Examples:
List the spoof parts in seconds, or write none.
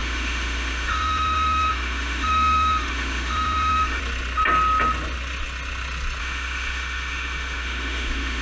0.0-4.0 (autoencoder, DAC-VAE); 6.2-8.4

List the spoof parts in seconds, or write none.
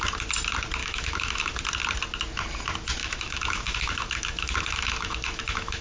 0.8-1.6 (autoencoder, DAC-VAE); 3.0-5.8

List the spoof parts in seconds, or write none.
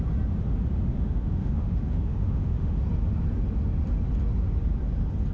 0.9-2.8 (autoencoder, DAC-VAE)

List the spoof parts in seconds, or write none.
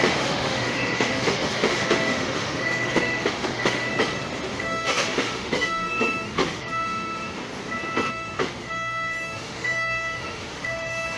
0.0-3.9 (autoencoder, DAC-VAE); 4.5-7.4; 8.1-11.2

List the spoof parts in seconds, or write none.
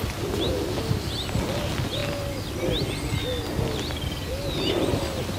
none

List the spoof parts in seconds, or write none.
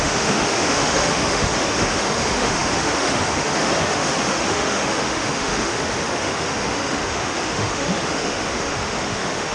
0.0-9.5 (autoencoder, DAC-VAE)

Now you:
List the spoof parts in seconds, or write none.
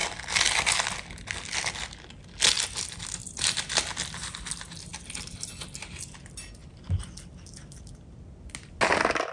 none